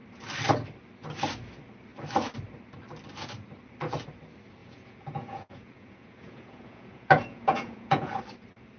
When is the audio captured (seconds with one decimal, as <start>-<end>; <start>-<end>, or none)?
0.0-4.6; 8.2-8.8